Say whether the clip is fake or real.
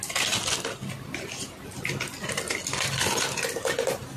real